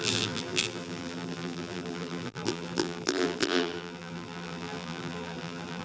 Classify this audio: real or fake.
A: fake